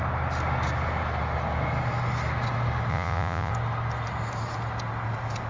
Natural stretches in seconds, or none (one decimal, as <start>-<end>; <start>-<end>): 0.0-2.9; 3.5-5.5